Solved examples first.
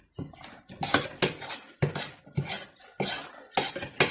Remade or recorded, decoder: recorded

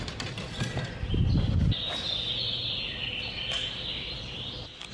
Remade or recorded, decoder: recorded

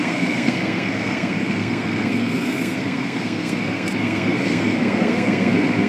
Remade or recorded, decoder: remade, codec, SNAC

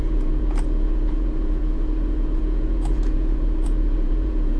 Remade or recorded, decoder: remade, vocoder, Vocos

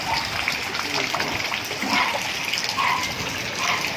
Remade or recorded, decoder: recorded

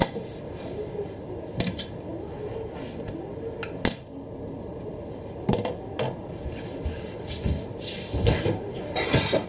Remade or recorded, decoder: recorded